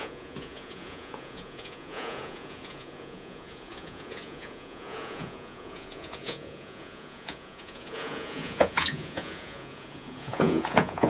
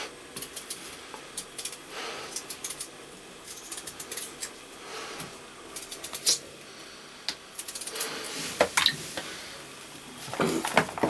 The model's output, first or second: first